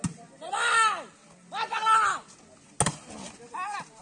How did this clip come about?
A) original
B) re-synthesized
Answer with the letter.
A